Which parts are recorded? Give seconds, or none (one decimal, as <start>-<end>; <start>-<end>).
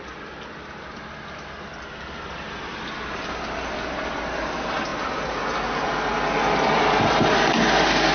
0.0-8.1